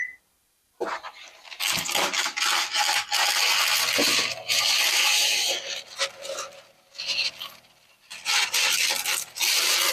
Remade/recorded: recorded